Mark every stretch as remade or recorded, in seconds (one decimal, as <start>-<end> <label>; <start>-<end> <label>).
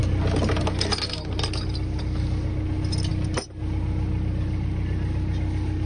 0.0-5.9 recorded